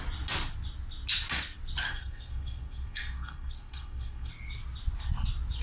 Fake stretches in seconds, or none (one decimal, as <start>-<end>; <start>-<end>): 1.9-4.3